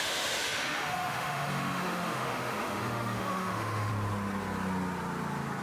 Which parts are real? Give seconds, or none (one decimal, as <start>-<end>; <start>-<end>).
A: 3.9-5.6